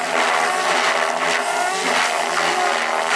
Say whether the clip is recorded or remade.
recorded